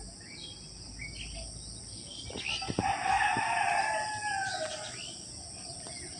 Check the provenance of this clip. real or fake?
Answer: real